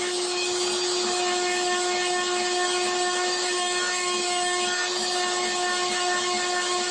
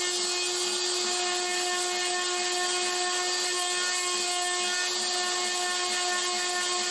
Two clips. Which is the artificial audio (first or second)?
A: first